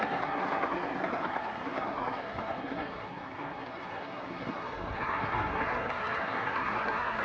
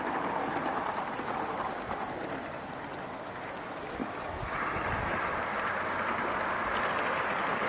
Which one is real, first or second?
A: second